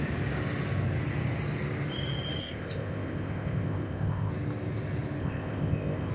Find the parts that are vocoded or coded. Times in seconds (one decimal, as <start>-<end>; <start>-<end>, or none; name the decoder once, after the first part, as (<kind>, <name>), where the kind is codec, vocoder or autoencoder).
2.4-4.3 (codec, ZipCodec); 5.2-6.1